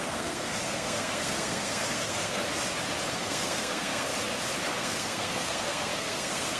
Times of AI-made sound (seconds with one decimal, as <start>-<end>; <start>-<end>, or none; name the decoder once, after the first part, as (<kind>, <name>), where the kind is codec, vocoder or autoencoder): 0.0-2.4 (codec, SNAC); 3.1-4.1; 4.7-6.6